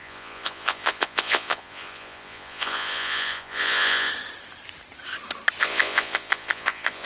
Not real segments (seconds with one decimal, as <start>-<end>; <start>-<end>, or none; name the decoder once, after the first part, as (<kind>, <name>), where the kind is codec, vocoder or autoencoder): 0.0-4.1 (vocoder, Vocos); 5.6-7.1